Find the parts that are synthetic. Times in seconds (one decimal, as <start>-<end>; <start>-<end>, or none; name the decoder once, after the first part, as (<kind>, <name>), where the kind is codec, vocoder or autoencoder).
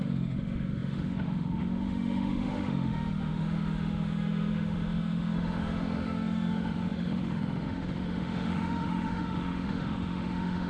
0.0-10.7 (autoencoder, DAC-VAE)